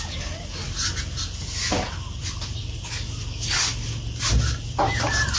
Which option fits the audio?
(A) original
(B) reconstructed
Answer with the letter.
A